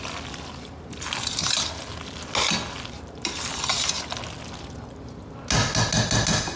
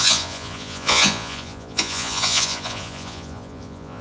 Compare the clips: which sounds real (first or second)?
first